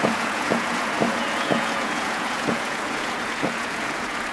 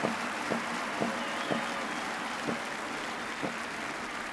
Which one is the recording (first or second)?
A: second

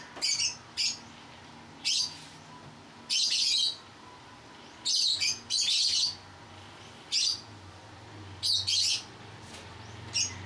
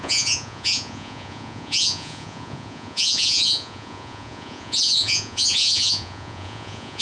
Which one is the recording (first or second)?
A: first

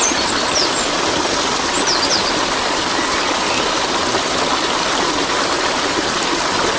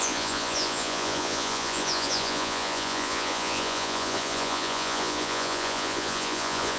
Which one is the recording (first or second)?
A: first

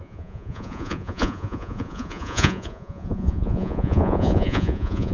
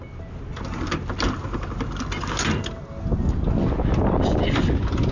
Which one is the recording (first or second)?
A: second